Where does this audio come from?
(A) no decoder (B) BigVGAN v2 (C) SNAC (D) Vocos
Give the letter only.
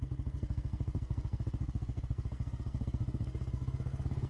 C